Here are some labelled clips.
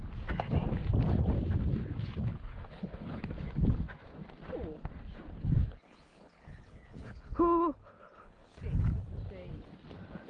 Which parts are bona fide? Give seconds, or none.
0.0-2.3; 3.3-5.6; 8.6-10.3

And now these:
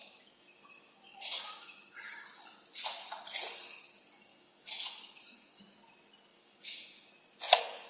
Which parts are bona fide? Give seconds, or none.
2.1-4.3; 5.6-6.3; 7.1-7.9

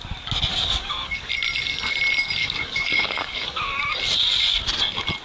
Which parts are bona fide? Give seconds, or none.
0.0-0.5; 1.3-2.4; 3.8-5.2

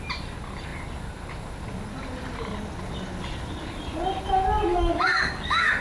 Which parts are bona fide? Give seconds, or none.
0.0-4.7

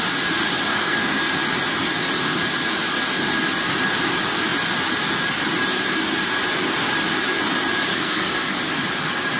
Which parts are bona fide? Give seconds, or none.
0.0-0.7; 1.3-7.9; 8.6-9.4

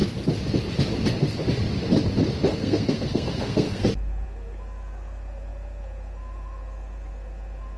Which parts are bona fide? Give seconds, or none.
0.0-2.6; 3.9-7.8